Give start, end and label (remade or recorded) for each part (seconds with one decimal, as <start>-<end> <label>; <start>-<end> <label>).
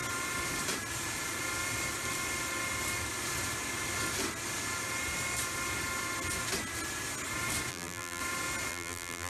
0.0-7.7 recorded; 7.7-8.2 remade; 8.2-8.7 recorded; 8.7-9.3 remade